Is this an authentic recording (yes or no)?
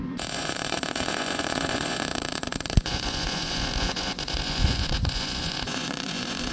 no